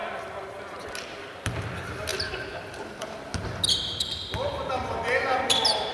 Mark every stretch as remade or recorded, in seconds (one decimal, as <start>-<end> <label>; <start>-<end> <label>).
0.0-5.9 recorded